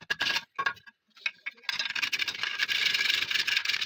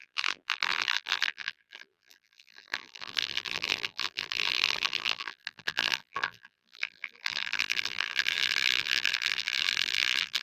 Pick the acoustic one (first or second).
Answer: first